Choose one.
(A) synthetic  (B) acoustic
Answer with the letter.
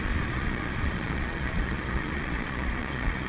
A